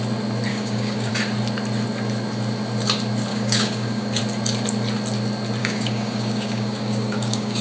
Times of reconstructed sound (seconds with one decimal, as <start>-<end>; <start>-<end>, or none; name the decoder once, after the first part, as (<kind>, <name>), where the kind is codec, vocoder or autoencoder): 0.5-1.1 (codec, DAC); 3.3-4.2; 5.6-7.6